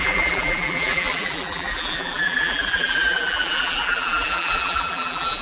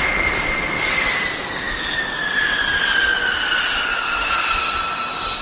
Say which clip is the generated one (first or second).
first